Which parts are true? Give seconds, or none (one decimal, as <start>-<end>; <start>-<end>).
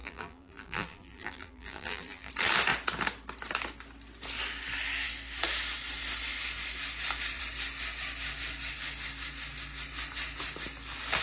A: 2.3-11.2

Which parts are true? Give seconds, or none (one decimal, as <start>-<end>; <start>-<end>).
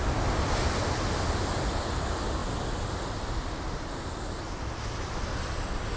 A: 0.0-6.0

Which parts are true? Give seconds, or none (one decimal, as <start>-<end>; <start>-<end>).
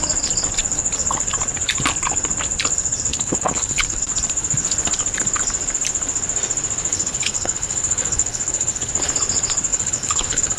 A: 0.0-3.1; 4.0-6.9; 8.9-9.7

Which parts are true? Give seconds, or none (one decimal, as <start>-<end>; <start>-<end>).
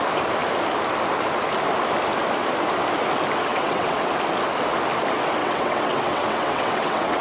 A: 0.0-3.5; 4.1-5.4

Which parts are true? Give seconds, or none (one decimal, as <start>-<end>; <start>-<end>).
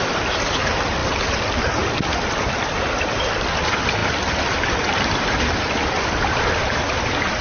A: 0.0-1.0; 3.0-4.0